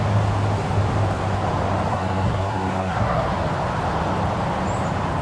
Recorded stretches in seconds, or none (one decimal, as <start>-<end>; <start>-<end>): 0.0-1.9; 3.3-5.2